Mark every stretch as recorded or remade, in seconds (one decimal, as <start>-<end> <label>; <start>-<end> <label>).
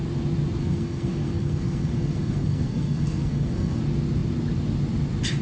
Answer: 0.0-0.6 recorded; 0.6-3.8 remade; 3.8-5.4 recorded